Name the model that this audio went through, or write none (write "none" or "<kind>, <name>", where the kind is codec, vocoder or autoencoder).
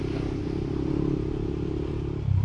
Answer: none